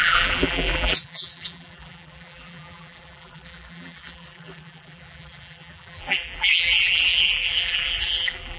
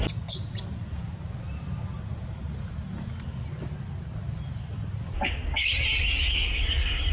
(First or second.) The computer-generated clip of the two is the first